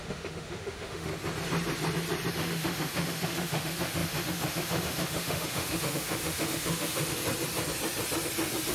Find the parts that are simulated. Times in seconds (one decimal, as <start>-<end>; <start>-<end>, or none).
0.0-1.1; 2.3-7.2